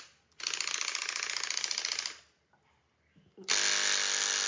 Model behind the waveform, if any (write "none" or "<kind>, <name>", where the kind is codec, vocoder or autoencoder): none